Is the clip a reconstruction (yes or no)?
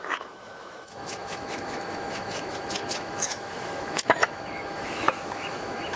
yes